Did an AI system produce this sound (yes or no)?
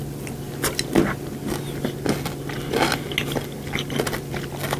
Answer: no